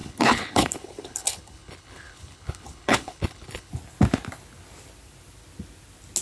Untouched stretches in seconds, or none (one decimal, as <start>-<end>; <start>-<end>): 3.7-6.2